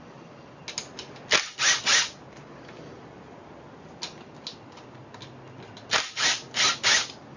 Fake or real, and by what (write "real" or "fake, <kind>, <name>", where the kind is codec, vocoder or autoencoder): real